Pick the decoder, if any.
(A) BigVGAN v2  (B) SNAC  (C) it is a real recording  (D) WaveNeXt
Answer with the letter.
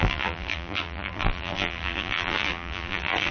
A